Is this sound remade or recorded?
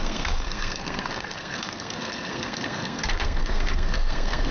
remade